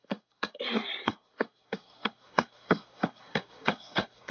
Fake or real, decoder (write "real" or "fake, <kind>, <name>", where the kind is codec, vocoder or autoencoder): fake, codec, SNAC